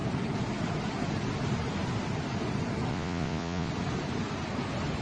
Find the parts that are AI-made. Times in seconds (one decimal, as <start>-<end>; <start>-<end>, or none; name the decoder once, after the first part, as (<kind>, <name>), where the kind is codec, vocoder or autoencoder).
2.9-3.7 (vocoder, Vocos)